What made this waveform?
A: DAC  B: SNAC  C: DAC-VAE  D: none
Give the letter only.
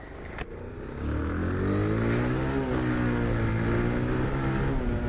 D